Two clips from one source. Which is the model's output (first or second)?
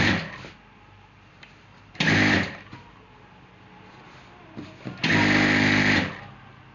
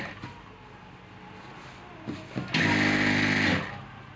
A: first